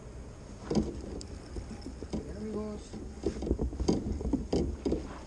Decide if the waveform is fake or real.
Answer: real